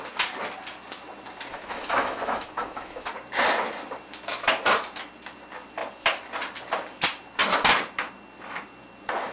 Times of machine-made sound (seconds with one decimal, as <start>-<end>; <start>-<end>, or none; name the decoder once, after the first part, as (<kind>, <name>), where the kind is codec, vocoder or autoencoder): 1.5-3.1 (autoencoder, DAC-VAE)